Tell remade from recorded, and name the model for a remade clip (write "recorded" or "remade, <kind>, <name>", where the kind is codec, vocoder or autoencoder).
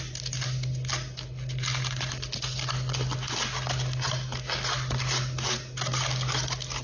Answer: recorded